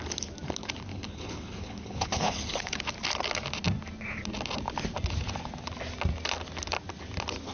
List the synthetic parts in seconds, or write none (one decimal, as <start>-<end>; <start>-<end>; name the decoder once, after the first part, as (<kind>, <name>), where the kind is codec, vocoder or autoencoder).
0.9-2.8 (codec, HILCodec)